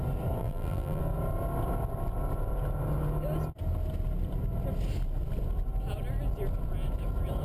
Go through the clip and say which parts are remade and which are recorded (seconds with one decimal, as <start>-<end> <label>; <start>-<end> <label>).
0.0-0.4 recorded; 0.4-1.0 remade; 1.0-7.4 recorded